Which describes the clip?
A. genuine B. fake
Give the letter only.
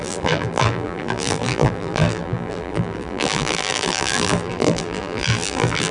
B